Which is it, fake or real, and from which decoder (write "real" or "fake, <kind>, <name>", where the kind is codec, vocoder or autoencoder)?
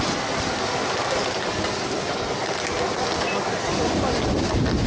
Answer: real